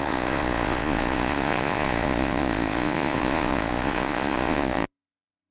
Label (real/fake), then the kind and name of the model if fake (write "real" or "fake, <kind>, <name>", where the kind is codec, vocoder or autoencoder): fake, vocoder, Vocos